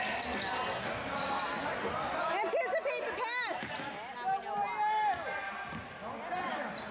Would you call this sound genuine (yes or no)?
yes